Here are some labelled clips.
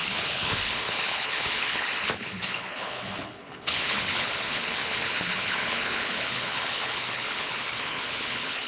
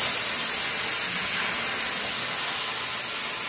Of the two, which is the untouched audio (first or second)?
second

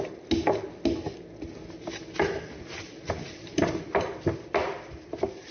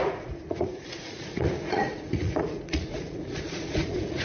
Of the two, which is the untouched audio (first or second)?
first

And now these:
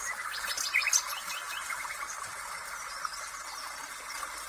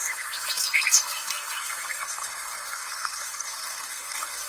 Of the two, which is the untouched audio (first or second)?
first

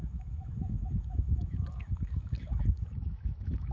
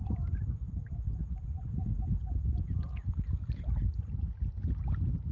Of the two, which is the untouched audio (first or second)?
second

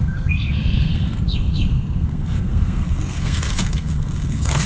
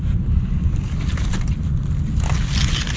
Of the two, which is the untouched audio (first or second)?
second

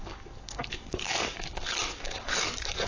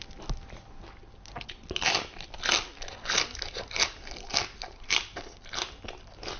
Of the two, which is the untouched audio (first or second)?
second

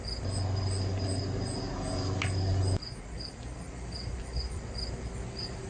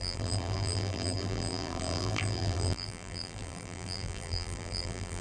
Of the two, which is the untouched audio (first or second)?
first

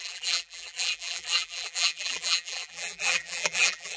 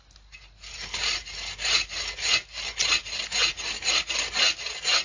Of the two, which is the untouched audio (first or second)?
second